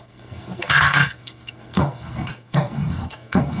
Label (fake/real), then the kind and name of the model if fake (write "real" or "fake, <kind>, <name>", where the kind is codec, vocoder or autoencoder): fake, codec, SNAC